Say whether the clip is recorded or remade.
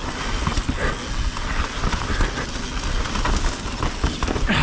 recorded